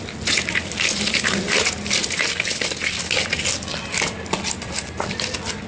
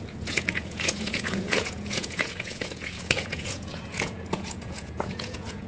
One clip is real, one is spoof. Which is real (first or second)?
first